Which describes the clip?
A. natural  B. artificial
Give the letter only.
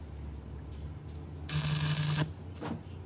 A